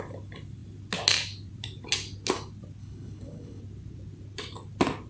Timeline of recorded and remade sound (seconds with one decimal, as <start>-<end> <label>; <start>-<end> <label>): 0.0-2.8 recorded; 2.8-3.6 remade; 3.6-5.1 recorded

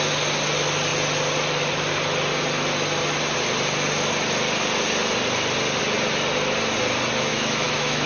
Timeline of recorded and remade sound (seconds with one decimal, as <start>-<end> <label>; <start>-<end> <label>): 0.0-7.3 recorded; 7.3-8.1 remade

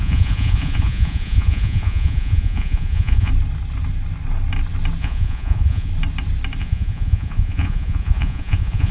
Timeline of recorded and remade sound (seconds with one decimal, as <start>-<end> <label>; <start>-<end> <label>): 0.0-3.3 remade; 3.3-5.0 recorded; 5.0-5.9 remade; 5.9-6.6 recorded; 6.6-8.9 remade

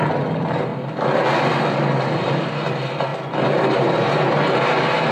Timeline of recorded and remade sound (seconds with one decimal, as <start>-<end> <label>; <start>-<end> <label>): 0.0-0.7 remade; 0.7-1.7 recorded; 1.7-5.1 remade

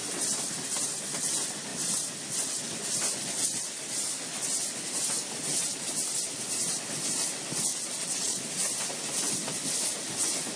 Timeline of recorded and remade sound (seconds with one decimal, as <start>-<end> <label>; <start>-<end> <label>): 0.0-7.7 recorded; 7.7-8.4 remade; 8.4-10.6 recorded

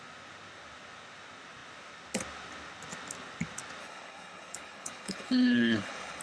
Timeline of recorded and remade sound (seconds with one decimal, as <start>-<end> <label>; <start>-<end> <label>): 0.0-3.8 recorded; 3.8-6.2 remade

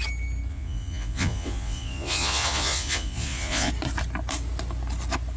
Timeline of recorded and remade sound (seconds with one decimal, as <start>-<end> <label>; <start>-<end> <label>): 0.0-0.5 recorded; 0.5-3.7 remade; 3.7-5.4 recorded